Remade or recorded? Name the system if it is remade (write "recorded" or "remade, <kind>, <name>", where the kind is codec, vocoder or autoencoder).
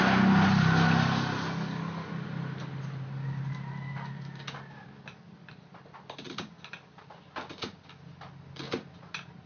recorded